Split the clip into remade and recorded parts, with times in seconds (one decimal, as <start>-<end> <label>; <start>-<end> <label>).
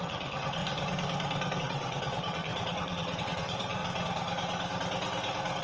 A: 0.0-0.6 remade; 0.6-1.6 recorded; 1.6-3.8 remade; 3.8-5.6 recorded